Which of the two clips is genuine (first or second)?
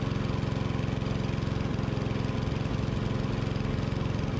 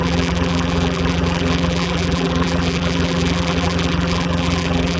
first